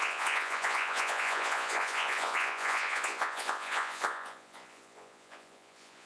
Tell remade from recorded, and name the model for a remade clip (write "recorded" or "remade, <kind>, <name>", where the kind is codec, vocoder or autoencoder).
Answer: remade, vocoder, Vocos